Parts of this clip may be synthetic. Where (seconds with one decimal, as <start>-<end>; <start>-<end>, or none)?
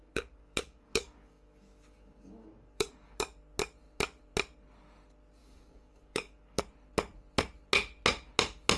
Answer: 0.0-3.2; 5.4-6.6